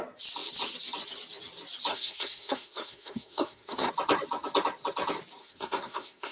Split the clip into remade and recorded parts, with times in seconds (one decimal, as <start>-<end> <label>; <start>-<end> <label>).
0.0-1.9 recorded; 1.9-3.9 remade; 3.9-5.4 recorded; 5.4-6.3 remade